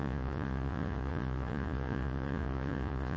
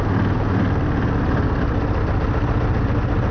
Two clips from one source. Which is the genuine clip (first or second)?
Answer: second